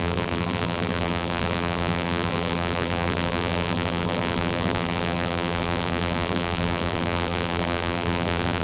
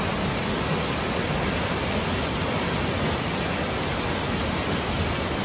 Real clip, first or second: second